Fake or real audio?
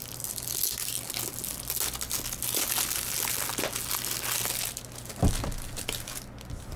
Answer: real